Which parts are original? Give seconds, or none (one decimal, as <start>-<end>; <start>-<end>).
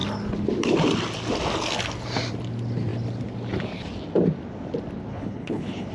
0.0-5.1